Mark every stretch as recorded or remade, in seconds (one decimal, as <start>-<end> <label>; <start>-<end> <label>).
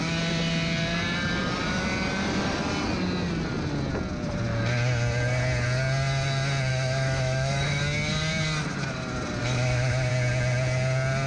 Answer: 0.0-6.7 recorded; 6.7-7.8 remade; 7.8-9.4 recorded; 9.4-10.1 remade; 10.1-11.3 recorded